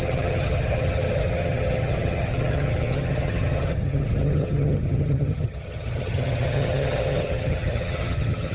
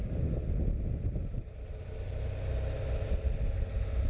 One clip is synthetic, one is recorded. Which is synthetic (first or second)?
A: first